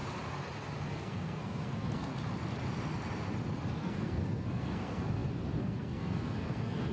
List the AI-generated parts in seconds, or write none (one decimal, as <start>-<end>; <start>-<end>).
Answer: 0.9-2.1; 3.8-6.9